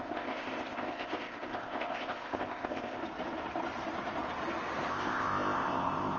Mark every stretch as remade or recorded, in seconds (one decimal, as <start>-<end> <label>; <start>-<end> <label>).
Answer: 0.0-3.0 remade; 3.0-4.9 recorded; 4.9-6.2 remade